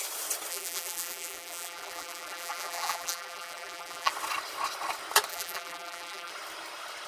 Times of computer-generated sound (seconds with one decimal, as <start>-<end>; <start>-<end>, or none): 0.5-4.1; 5.3-6.3